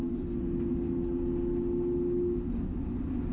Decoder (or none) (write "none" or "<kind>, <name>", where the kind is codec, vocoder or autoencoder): none